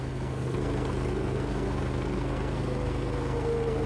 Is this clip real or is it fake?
fake